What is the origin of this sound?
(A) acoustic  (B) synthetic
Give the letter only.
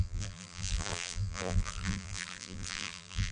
B